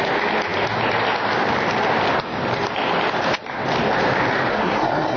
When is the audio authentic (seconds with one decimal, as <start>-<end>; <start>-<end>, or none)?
0.0-4.5